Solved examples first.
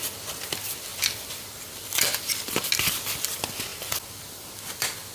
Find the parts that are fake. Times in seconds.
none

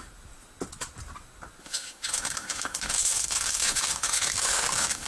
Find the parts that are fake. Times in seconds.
1.6-5.1 (autoencoder, DAC-VAE)